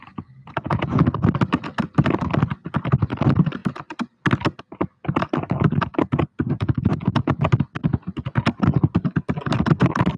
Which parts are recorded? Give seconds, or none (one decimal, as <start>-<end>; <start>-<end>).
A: 0.0-10.2